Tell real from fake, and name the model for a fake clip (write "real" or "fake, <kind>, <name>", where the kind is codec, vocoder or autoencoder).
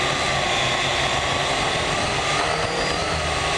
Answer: real